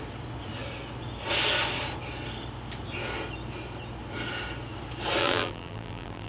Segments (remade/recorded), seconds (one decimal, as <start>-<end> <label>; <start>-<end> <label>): 0.0-5.2 recorded; 5.2-6.3 remade